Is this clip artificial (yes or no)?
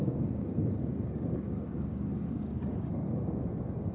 yes